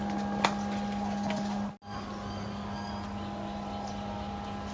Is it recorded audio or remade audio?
recorded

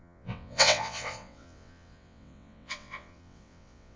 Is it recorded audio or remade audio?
remade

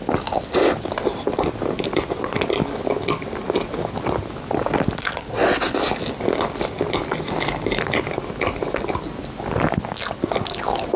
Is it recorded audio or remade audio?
recorded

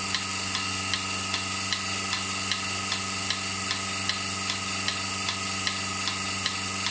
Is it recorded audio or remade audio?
recorded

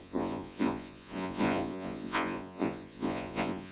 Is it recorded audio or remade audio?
remade